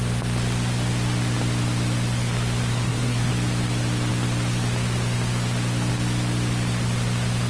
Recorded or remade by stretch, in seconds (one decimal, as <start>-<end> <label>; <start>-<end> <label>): 0.0-2.7 recorded; 2.7-3.3 remade; 3.3-7.5 recorded